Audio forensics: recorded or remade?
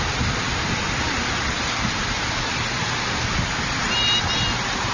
recorded